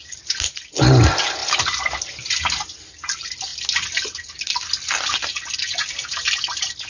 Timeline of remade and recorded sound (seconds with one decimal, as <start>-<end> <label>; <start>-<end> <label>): 0.0-6.9 recorded